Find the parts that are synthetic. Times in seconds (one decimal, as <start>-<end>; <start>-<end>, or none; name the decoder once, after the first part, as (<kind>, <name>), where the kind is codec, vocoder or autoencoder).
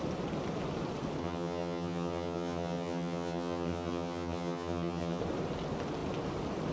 1.2-5.2 (vocoder, HiFi-GAN)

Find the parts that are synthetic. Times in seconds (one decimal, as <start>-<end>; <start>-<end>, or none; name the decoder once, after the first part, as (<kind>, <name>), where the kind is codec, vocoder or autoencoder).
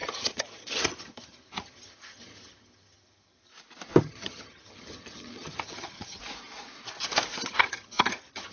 0.0-3.5 (vocoder, HiFi-GAN); 4.0-6.2; 7.5-8.5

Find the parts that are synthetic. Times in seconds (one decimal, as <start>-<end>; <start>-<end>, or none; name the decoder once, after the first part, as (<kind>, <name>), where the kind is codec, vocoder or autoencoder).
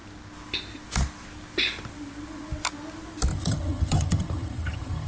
3.3-5.1 (vocoder, HiFi-GAN)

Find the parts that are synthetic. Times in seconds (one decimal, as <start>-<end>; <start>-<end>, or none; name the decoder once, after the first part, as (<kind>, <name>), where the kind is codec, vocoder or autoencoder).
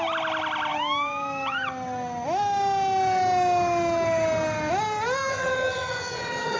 5.3-6.6 (vocoder, HiFi-GAN)